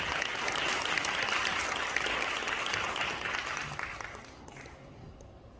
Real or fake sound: real